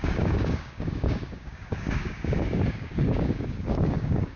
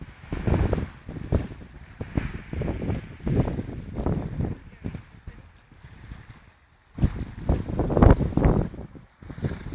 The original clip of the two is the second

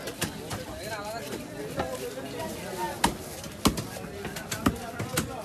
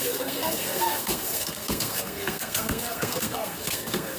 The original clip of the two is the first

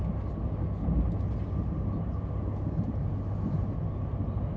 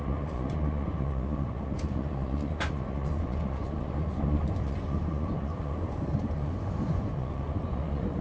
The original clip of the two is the first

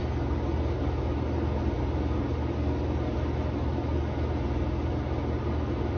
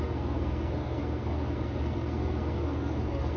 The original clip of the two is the first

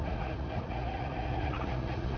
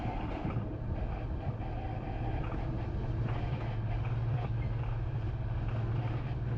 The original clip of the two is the second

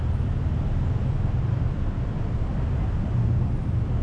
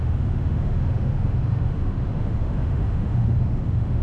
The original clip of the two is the first